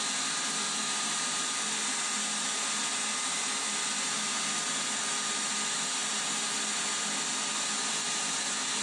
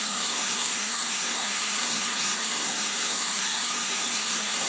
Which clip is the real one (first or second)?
first